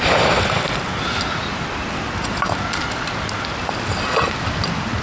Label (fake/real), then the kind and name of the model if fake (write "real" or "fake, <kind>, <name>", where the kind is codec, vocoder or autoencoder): real